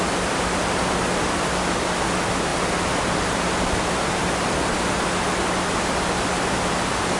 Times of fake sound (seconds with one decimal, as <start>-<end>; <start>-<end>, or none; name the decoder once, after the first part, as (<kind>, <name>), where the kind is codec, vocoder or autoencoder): none